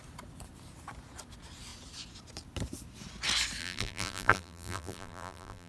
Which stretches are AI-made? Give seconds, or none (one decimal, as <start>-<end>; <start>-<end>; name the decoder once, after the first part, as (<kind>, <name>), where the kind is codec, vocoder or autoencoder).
3.6-5.7 (vocoder, BigVGAN v2)